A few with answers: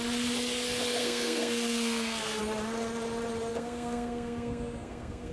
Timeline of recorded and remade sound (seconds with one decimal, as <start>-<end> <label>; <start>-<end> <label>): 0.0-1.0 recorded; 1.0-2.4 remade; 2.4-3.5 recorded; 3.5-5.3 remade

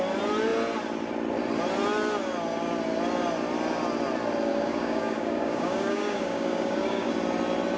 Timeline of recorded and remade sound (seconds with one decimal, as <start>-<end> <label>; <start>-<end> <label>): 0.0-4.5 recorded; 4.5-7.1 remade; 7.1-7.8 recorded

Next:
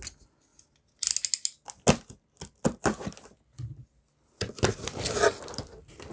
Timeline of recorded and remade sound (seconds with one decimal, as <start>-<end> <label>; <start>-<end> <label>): 0.0-6.1 recorded

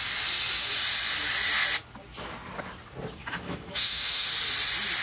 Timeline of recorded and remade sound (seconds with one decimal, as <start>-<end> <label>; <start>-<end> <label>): 0.0-3.2 recorded; 3.2-4.3 remade; 4.3-5.0 recorded

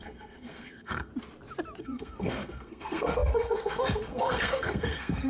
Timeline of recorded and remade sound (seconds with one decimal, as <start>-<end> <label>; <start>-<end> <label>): 0.0-1.1 remade; 1.1-1.8 recorded; 1.8-5.3 remade

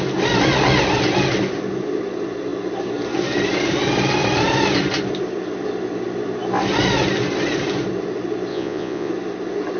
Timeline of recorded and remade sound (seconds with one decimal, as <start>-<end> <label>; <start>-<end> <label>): 0.0-8.5 recorded; 8.5-9.1 remade; 9.1-9.8 recorded